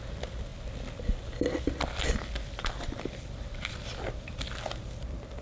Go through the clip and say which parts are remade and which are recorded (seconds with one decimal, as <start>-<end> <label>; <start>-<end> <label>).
0.0-5.4 remade